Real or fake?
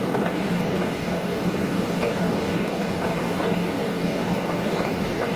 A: fake